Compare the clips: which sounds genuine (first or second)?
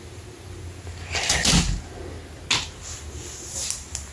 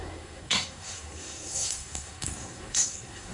first